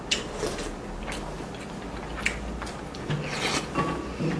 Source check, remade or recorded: recorded